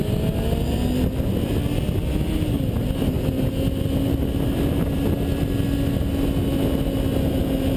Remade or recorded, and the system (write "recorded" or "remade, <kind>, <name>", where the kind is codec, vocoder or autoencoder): recorded